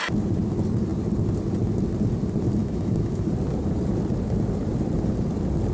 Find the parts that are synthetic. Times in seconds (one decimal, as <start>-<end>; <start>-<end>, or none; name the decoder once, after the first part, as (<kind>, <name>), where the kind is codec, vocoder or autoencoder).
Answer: 2.6-3.3 (autoencoder, DAC-VAE)